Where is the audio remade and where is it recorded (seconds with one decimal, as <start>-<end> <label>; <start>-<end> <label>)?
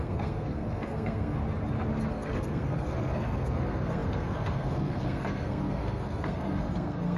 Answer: 0.0-1.4 remade; 1.4-2.1 recorded; 2.1-7.2 remade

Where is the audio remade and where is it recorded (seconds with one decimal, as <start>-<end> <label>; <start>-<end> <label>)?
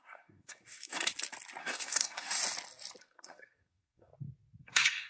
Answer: 0.0-1.1 remade; 1.1-1.6 recorded; 1.6-2.4 remade; 2.4-3.0 recorded; 3.0-4.1 remade; 4.1-4.6 recorded; 4.6-5.1 remade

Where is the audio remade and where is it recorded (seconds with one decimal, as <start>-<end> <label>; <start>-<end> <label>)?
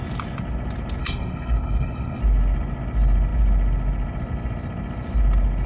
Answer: 0.0-1.0 recorded; 1.0-2.2 remade; 2.2-5.7 recorded